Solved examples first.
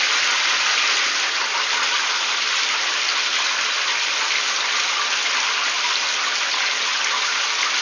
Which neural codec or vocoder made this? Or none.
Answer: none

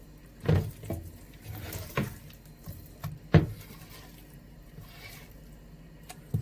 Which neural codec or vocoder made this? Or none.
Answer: none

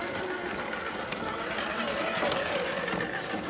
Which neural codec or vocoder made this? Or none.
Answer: none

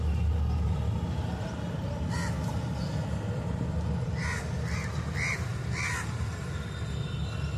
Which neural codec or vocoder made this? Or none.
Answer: none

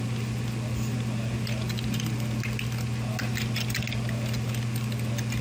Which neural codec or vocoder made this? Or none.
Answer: none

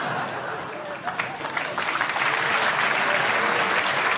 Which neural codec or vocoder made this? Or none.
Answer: none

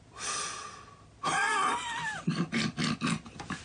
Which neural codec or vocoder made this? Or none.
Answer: none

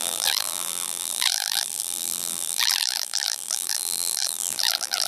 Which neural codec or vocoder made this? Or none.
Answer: vocoder, BigVGAN v2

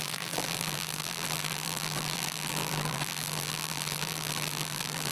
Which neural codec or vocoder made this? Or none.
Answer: vocoder, BigVGAN v2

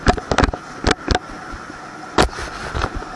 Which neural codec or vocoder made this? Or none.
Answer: none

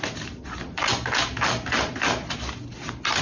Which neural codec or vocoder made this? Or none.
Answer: none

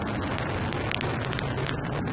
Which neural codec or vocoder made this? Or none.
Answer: none